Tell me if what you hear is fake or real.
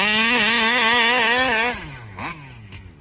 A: real